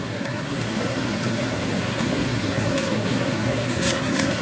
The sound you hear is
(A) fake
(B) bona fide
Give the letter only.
A